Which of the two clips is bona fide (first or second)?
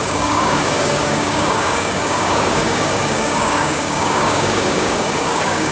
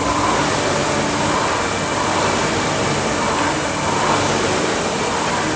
second